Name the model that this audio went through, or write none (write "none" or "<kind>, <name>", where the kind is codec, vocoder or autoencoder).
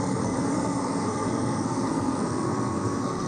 codec, SNAC